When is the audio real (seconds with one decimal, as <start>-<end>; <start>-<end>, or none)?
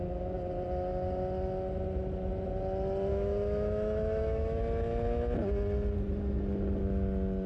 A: 0.0-3.1; 4.6-7.5